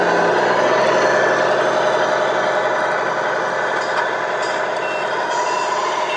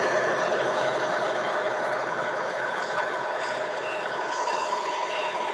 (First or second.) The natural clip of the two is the first